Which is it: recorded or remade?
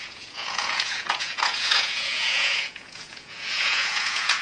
remade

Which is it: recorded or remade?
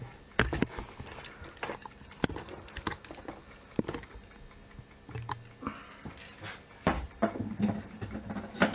recorded